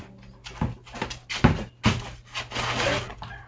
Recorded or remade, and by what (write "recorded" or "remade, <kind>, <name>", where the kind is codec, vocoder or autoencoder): recorded